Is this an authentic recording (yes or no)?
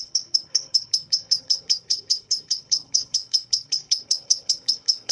no